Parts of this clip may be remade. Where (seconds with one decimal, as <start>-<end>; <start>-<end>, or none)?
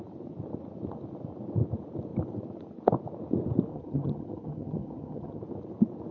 3.7-5.4